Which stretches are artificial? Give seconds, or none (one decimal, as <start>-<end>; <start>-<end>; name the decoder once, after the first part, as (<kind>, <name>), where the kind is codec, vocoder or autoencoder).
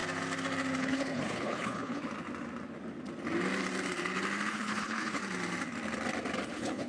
0.8-2.0 (codec, HILCodec); 4.5-5.2; 6.5-6.9